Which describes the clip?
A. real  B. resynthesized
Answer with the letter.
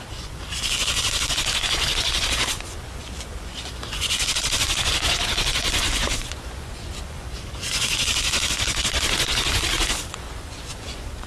B